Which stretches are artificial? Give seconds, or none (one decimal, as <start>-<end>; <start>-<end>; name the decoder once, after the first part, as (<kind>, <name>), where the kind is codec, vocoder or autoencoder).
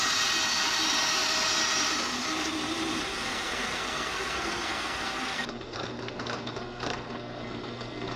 3.1-8.2 (codec, SNAC)